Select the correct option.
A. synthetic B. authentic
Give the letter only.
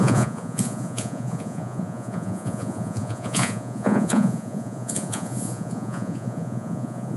A